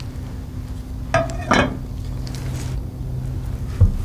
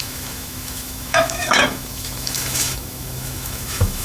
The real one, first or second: first